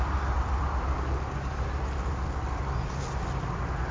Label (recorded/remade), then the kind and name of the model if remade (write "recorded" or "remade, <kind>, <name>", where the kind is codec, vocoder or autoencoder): recorded